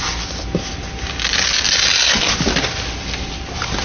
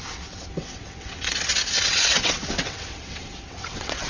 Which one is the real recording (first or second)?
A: first